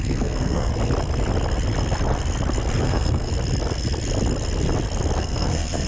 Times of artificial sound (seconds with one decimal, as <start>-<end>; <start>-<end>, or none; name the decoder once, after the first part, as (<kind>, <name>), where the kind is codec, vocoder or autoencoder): 0.0-0.7 (codec, SNAC); 2.8-3.3; 5.2-5.9